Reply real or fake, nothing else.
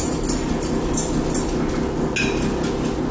real